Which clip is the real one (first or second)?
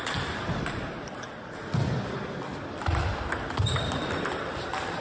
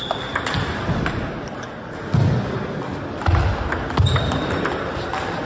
second